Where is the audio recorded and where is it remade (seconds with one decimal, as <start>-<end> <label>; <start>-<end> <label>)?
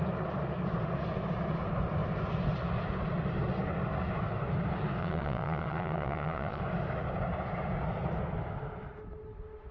0.0-5.0 recorded; 5.0-6.6 remade; 6.6-9.7 recorded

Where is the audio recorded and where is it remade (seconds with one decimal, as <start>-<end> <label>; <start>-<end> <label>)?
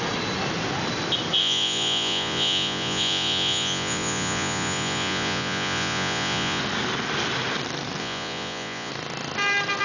0.0-1.4 recorded; 1.4-6.6 remade; 6.6-8.0 recorded; 8.0-8.9 remade; 8.9-9.8 recorded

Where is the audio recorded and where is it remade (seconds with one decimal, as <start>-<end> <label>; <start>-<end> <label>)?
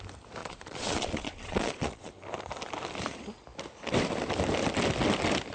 0.0-0.4 recorded; 0.4-2.1 remade; 2.1-5.5 recorded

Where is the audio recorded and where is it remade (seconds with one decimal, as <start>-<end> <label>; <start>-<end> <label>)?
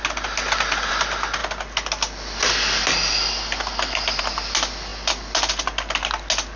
0.0-6.6 recorded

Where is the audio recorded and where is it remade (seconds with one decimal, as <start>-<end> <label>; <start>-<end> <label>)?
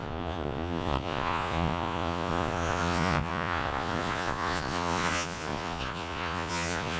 0.0-7.0 remade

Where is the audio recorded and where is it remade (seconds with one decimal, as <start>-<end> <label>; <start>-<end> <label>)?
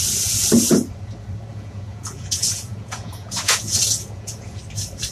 0.0-1.5 recorded; 1.5-4.6 remade; 4.6-5.1 recorded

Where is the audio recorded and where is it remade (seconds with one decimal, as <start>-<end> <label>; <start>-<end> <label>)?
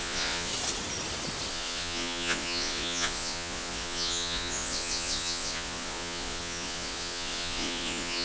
0.0-0.5 remade; 0.5-1.5 recorded; 1.5-8.2 remade